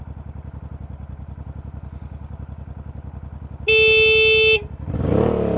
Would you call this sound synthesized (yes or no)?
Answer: no